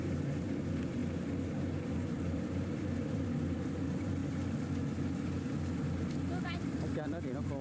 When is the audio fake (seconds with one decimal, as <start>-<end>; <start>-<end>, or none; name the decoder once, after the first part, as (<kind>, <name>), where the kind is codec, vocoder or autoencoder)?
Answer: 0.0-1.0 (vocoder, BigVGAN v2); 1.9-4.2; 6.6-7.6